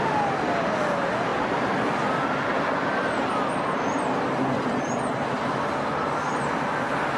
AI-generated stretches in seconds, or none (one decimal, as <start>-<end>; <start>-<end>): none